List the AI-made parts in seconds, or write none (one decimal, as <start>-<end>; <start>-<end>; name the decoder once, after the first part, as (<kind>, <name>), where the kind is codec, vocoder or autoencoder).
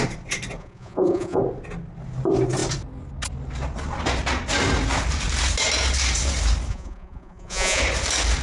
0.6-1.4 (vocoder, Vocos); 6.7-7.8